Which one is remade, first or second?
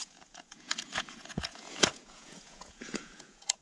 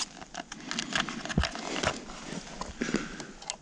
first